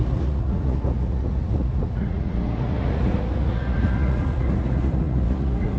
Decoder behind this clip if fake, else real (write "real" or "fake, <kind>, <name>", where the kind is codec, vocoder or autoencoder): fake, vocoder, Vocos